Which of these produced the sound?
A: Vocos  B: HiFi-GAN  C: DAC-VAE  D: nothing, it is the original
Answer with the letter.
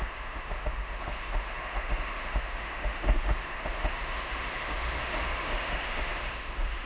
C